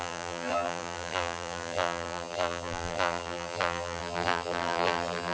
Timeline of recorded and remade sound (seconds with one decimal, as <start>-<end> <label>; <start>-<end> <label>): 0.0-5.3 remade